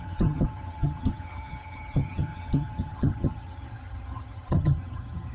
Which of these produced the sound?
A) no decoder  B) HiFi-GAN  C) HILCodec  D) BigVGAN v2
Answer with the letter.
B